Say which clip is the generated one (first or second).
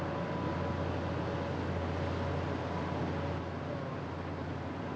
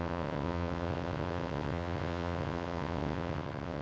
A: second